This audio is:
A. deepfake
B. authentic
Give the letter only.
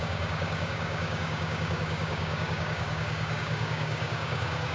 A